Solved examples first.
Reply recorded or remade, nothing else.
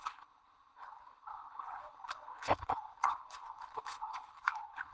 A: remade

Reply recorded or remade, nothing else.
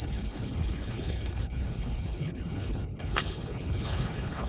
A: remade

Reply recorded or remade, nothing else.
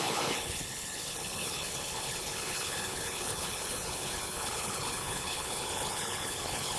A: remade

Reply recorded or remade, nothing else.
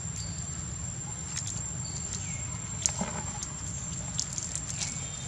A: recorded